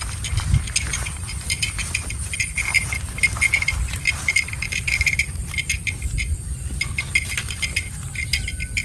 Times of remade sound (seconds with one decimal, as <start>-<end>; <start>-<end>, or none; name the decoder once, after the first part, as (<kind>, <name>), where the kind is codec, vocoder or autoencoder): 0.9-5.6 (vocoder, BigVGAN v2)